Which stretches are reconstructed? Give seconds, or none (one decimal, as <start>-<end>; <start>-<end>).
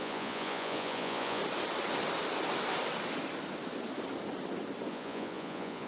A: 0.0-1.4; 4.9-5.9